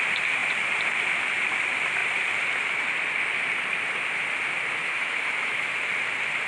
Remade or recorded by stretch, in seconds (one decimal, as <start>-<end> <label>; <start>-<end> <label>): 0.0-4.8 recorded; 4.8-5.9 remade; 5.9-6.5 recorded